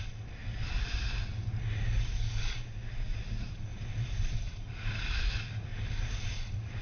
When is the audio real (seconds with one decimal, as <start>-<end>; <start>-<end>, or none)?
0.0-3.7; 4.3-5.7